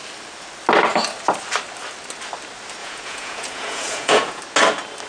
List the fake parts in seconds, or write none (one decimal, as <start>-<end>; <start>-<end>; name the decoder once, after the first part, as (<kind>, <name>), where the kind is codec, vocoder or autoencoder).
2.8-4.4 (vocoder, Vocos)